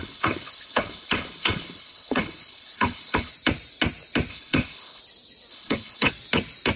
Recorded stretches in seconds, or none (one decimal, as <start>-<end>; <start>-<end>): 3.3-4.3; 5.0-5.5; 6.1-6.8